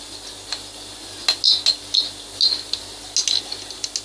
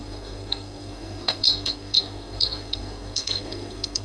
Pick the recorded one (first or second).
first